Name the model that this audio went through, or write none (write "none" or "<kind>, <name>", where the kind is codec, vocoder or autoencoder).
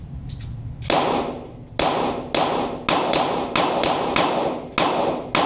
none